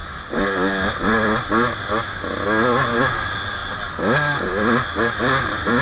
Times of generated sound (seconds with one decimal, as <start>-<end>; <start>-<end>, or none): none